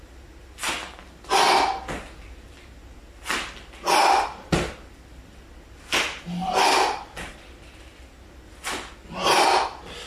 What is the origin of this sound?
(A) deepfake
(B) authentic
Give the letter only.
B